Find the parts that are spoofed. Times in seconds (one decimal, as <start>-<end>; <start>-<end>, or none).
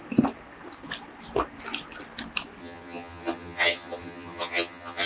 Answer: 2.6-5.1